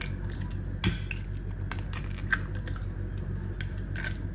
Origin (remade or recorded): recorded